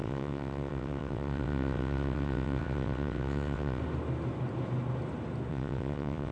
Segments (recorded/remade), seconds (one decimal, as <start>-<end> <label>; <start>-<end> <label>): 0.0-3.8 remade; 3.8-5.5 recorded; 5.5-6.3 remade